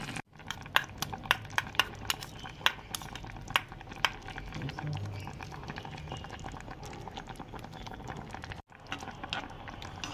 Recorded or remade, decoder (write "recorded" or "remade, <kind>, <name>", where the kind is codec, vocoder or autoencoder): recorded